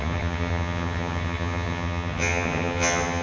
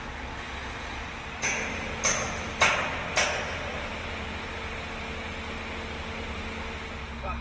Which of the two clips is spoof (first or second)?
first